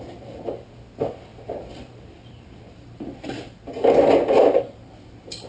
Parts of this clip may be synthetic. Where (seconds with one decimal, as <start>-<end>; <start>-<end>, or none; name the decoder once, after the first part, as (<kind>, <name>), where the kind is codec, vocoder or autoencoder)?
none